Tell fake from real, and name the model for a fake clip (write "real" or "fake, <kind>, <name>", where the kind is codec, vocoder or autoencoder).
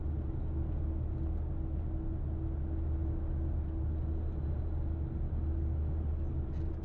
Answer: real